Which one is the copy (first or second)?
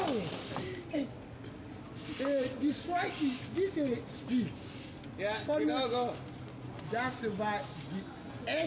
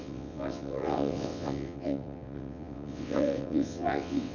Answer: second